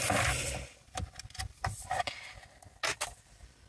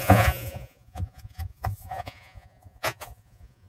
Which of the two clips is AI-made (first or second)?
second